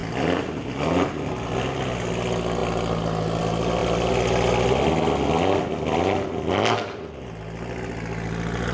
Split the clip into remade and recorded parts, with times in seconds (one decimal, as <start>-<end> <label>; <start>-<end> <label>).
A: 0.0-8.7 recorded